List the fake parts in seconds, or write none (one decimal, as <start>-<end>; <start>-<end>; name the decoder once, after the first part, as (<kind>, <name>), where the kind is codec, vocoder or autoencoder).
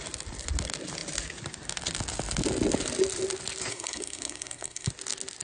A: 3.7-4.9 (codec, SNAC)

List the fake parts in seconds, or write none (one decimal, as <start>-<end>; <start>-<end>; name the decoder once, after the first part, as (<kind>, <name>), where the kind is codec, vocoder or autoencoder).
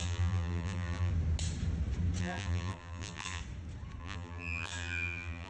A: 0.0-1.1 (vocoder, BigVGAN v2); 2.2-3.4; 4.0-5.5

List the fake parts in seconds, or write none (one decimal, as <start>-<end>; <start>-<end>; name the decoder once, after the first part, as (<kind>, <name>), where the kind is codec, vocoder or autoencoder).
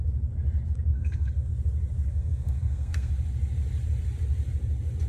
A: 0.9-1.5 (codec, SNAC); 2.1-3.1